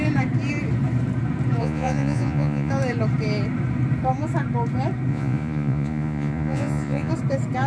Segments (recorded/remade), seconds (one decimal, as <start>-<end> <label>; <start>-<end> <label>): 0.0-1.6 recorded; 1.6-2.7 remade; 2.7-5.1 recorded; 5.1-7.1 remade; 7.1-7.7 recorded